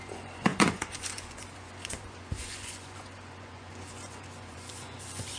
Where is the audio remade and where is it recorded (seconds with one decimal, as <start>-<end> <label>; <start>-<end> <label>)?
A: 0.0-5.4 remade